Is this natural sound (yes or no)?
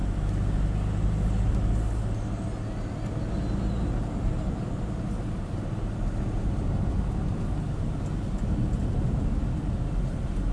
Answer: yes